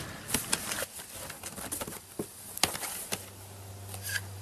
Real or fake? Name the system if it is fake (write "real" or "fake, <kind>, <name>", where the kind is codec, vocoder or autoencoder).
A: real